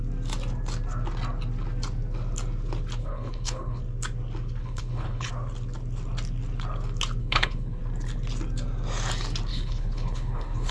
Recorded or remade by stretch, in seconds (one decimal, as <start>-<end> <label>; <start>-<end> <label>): 0.0-3.0 recorded; 3.0-3.8 remade; 3.8-4.6 recorded; 4.6-5.3 remade; 5.3-7.2 recorded; 7.2-7.8 remade; 7.8-9.5 recorded; 9.5-10.7 remade